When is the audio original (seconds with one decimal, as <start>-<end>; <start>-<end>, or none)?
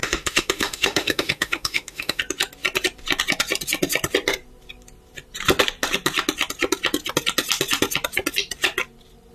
2.2-9.3